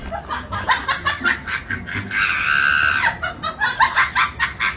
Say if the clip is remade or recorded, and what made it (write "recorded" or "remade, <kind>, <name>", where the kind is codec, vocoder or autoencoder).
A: recorded